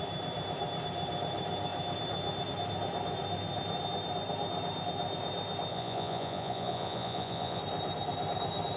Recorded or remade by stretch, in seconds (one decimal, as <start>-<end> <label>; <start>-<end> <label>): 0.0-5.7 recorded; 5.7-7.6 remade; 7.6-8.8 recorded